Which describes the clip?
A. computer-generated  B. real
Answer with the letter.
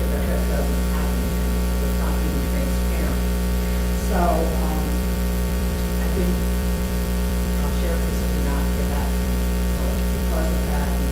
A